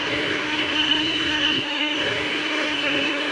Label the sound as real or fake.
fake